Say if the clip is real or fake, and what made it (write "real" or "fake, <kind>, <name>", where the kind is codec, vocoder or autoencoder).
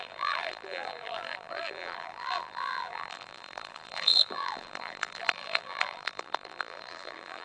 fake, vocoder, BigVGAN v2